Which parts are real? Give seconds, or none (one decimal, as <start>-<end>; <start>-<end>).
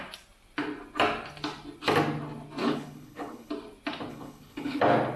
0.0-2.6; 3.5-4.1; 4.8-5.2